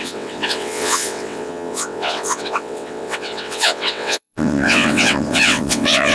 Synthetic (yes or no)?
yes